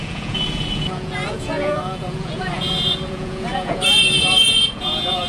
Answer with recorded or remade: remade